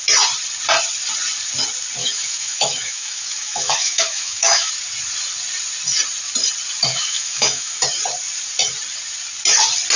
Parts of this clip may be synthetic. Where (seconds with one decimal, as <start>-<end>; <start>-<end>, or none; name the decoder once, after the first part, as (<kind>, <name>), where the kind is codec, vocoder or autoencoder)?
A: 2.0-4.7 (autoencoder, DAC-VAE); 6.9-7.8

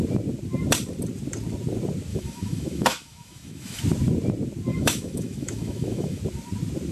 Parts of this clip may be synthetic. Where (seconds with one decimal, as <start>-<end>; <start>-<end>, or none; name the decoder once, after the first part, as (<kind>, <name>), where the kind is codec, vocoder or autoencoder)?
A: 2.1-3.8 (autoencoder, DAC-VAE); 4.7-6.2

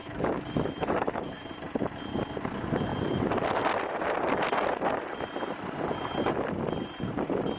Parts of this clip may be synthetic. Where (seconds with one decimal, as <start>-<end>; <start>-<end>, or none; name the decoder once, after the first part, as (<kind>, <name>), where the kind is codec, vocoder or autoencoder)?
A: 0.0-1.3 (autoencoder, DAC-VAE)

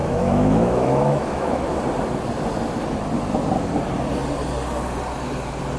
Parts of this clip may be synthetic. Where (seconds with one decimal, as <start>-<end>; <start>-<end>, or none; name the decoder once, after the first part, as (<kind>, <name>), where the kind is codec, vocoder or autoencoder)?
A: 0.0-1.8 (autoencoder, DAC-VAE)

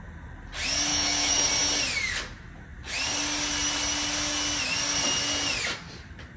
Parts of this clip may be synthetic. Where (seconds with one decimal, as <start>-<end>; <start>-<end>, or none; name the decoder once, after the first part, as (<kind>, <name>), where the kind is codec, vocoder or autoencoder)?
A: 0.9-1.4 (autoencoder, DAC-VAE)

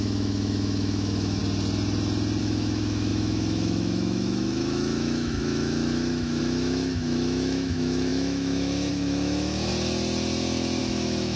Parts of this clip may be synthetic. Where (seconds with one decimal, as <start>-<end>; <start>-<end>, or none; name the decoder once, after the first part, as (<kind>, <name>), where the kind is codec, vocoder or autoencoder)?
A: 0.0-1.4 (autoencoder, DAC-VAE); 2.4-9.7; 10.8-11.4

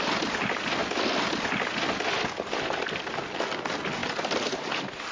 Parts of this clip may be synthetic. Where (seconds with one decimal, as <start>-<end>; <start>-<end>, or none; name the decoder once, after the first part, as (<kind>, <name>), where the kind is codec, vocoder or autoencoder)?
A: none